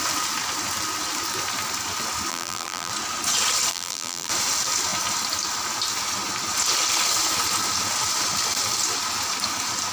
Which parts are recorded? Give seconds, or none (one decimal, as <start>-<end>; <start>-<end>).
0.0-2.3; 2.9-3.7; 4.3-9.9